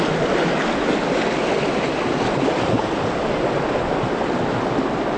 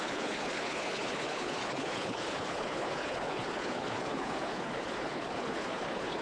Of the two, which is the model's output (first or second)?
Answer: second